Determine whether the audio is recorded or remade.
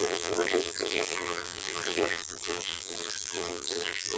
remade